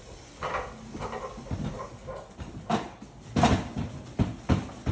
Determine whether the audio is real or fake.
real